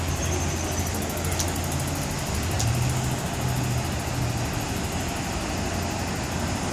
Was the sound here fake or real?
real